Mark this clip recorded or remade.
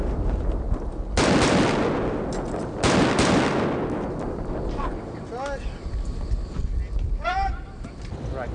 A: recorded